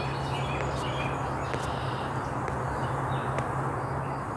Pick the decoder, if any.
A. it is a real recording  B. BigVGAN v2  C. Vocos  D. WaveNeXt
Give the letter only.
A